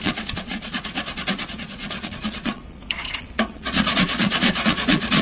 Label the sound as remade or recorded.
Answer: remade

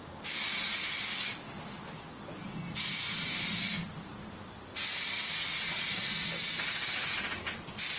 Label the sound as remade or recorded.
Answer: recorded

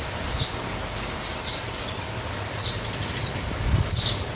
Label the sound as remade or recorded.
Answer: recorded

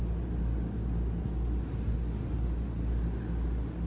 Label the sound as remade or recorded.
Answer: recorded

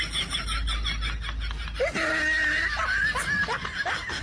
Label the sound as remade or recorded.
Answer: recorded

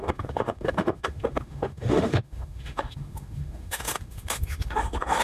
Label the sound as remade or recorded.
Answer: remade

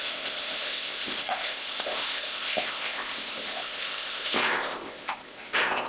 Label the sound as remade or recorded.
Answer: remade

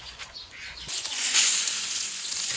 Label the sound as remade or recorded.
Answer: remade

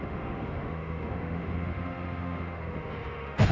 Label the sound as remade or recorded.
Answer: remade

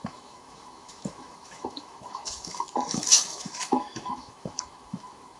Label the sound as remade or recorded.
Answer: remade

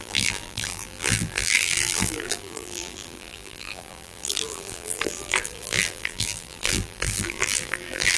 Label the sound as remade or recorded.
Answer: remade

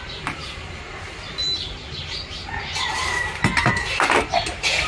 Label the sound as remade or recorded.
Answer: recorded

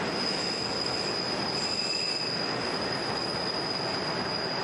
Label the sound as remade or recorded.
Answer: recorded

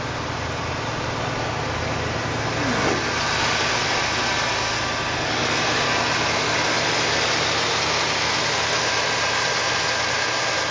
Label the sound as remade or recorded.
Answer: recorded